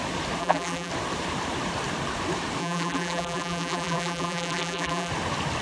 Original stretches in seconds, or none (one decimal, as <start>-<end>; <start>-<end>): 0.0-0.4; 0.9-2.6; 5.1-5.6